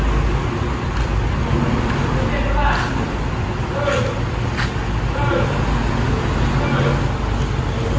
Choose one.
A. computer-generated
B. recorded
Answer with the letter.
B